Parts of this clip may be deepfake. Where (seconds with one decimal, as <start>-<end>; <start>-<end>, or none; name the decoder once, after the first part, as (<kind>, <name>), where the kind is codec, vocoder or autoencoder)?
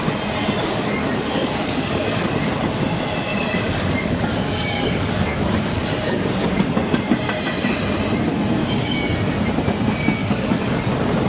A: 0.6-2.3 (codec, DAC); 3.3-6.5; 8.6-9.1; 10.2-10.8